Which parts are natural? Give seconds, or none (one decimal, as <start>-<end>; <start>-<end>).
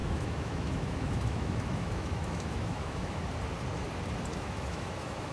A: 3.2-4.3